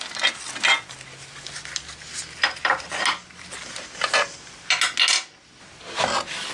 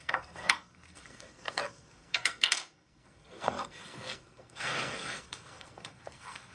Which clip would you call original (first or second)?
first